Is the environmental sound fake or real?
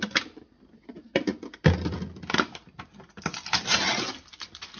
real